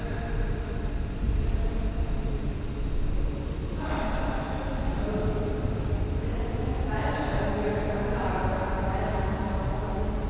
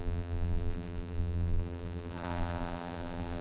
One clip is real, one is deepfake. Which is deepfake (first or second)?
second